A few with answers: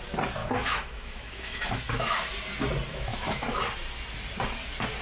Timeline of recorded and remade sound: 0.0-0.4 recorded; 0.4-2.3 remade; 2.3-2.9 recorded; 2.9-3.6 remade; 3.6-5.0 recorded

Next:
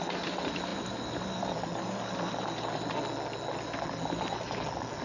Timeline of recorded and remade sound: 0.0-5.0 recorded

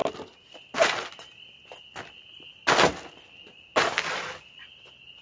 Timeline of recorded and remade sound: 0.0-5.2 recorded

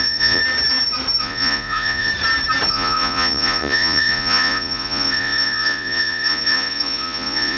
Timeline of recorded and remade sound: 0.0-0.4 remade; 0.4-1.2 recorded; 1.2-2.1 remade; 2.1-2.7 recorded; 2.7-7.6 remade

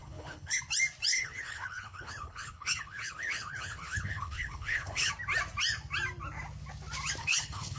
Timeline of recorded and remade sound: 0.0-0.6 remade; 0.6-1.1 recorded; 1.1-5.1 remade; 5.1-7.2 recorded; 7.2-7.8 remade

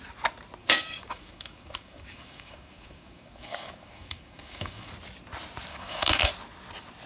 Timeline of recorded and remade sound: 0.0-0.6 recorded; 0.6-4.9 remade; 4.9-5.7 recorded; 5.7-6.3 remade; 6.3-7.1 recorded